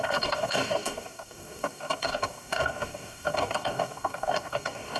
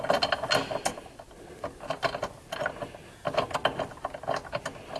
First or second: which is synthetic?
first